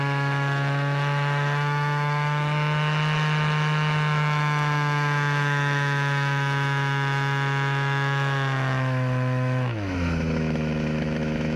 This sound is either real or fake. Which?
fake